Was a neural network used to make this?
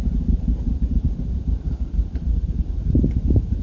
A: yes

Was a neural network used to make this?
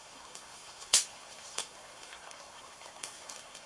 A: yes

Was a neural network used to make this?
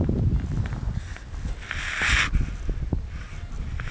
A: no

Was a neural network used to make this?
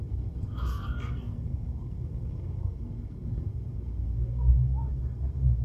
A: yes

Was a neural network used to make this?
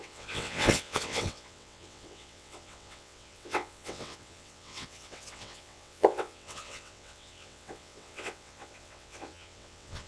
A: yes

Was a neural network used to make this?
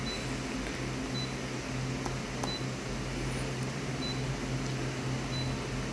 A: no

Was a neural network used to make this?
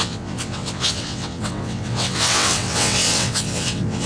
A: yes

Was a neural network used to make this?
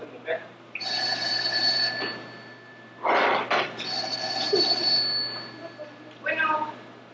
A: no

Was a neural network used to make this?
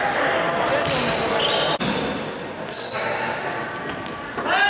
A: no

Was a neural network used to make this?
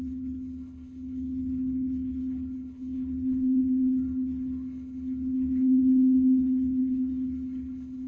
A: yes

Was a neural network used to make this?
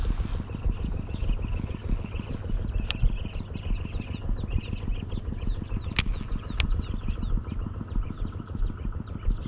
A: no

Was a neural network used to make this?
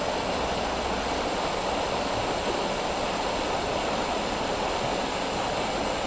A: no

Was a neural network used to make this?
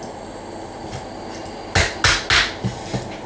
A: no